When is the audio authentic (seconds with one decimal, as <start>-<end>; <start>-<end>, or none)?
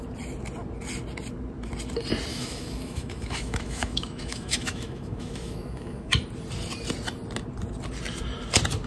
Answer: 0.0-2.3; 6.1-8.9